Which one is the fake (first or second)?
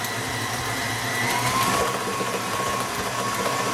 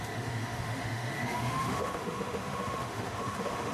second